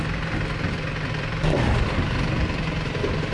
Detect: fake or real fake